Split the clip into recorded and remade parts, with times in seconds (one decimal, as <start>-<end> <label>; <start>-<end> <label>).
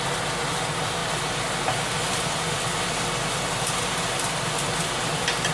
0.0-5.5 recorded